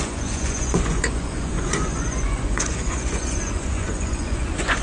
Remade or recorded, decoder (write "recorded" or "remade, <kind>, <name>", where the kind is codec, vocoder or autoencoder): remade, vocoder, Vocos